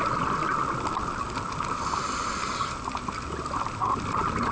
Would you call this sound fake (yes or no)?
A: no